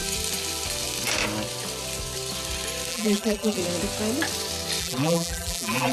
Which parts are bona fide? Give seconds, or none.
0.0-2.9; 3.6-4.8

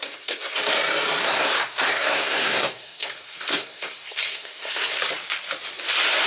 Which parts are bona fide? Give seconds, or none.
0.6-1.2; 5.0-6.3

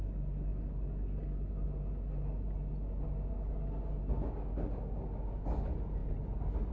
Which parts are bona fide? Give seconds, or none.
0.0-6.7

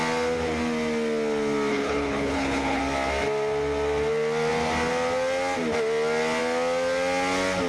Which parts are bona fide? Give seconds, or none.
0.0-1.7; 2.8-7.7

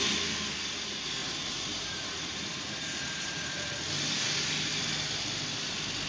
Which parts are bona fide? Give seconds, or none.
0.0-1.2; 3.7-6.1

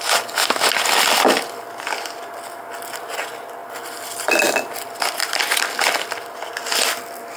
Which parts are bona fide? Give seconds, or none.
0.0-7.4

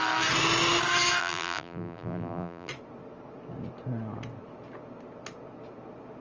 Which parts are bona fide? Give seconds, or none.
0.0-1.2; 2.7-6.2

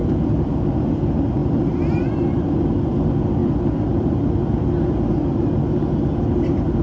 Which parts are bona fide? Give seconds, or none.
0.7-1.4; 2.8-3.4; 4.1-6.8